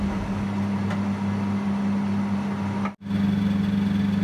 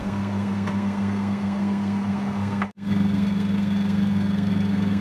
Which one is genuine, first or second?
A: first